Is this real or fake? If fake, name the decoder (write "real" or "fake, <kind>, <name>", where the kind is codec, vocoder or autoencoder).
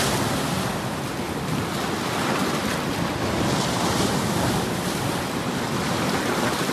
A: real